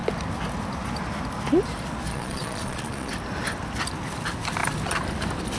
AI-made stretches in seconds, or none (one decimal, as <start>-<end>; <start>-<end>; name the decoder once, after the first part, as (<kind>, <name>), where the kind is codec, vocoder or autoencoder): 2.1-3.1 (vocoder, Vocos)